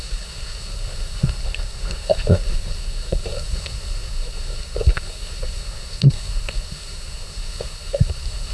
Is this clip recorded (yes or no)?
no